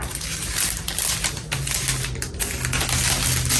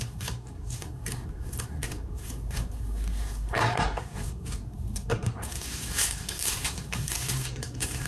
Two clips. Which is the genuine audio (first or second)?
first